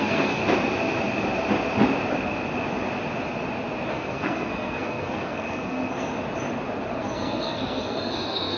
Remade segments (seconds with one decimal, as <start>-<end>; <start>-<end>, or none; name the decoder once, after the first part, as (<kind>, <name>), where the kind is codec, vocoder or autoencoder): 0.0-0.4 (codec, SNAC); 3.9-6.1; 6.9-8.6